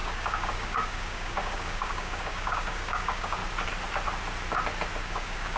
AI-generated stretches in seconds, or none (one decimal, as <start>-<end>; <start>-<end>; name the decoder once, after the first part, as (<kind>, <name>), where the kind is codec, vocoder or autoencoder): 0.0-3.4 (codec, DAC); 5.0-5.6